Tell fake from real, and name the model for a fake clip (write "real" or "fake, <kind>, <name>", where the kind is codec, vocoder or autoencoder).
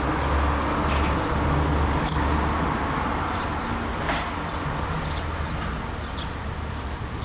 real